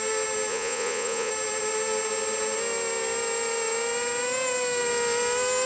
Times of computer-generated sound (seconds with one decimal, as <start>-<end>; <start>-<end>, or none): 0.5-1.3